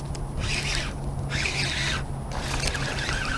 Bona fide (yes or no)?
yes